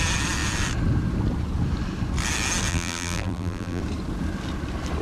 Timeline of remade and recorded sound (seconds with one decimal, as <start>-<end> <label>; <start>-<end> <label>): 0.0-2.7 recorded; 2.7-3.8 remade; 3.8-5.0 recorded